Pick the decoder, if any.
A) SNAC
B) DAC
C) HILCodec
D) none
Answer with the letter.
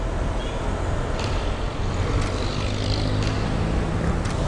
D